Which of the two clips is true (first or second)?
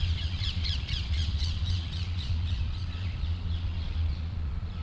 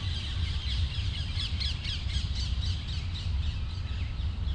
second